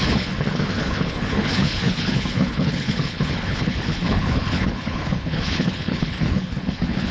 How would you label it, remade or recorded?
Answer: remade